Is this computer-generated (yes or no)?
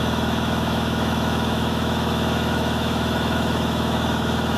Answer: yes